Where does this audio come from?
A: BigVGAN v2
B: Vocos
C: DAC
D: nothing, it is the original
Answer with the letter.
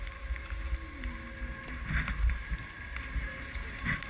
D